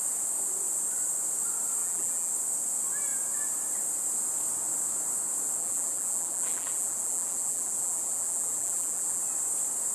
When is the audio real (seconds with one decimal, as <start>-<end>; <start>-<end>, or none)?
0.0-1.8; 2.3-5.6; 9.2-9.9